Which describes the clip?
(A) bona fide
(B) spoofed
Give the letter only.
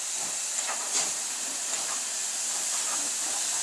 A